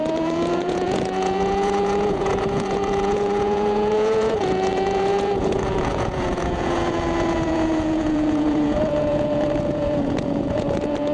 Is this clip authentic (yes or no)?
no